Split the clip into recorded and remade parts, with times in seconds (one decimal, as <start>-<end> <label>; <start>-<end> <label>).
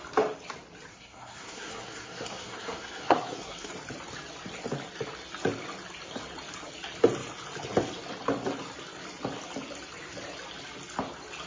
0.0-0.9 recorded; 0.9-3.7 remade; 3.7-11.5 recorded